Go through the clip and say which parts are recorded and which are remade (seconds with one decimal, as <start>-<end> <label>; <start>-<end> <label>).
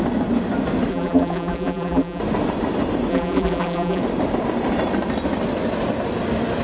0.0-0.9 recorded; 0.9-2.2 remade; 2.2-3.1 recorded; 3.1-4.0 remade; 4.0-6.6 recorded